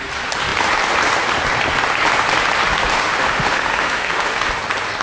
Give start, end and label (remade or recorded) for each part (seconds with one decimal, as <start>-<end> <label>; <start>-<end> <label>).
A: 0.0-2.9 recorded; 2.9-4.5 remade; 4.5-5.0 recorded